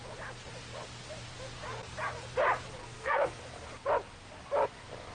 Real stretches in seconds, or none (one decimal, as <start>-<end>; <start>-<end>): 0.0-2.8; 3.4-5.1